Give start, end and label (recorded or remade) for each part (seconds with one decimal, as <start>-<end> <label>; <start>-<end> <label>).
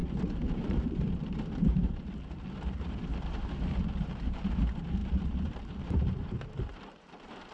0.0-7.5 remade